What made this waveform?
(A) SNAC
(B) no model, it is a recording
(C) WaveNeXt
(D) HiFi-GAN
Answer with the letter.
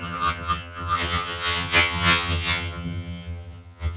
D